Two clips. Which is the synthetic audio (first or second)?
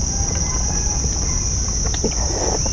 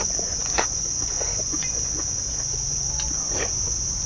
second